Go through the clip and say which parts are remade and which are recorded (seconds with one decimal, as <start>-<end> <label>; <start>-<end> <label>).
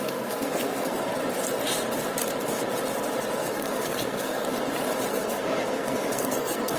0.0-1.1 remade; 1.1-3.4 recorded; 3.4-4.5 remade; 4.5-5.1 recorded; 5.1-6.8 remade